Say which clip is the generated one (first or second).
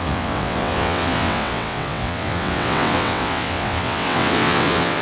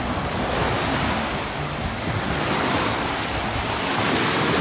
first